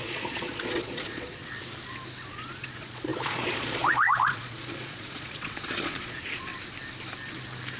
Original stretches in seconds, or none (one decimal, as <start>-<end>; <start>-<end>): 1.4-2.3; 6.5-7.8